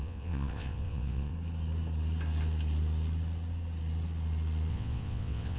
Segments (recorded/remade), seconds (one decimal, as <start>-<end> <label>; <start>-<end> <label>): 0.0-1.3 remade; 1.3-4.7 recorded; 4.7-5.6 remade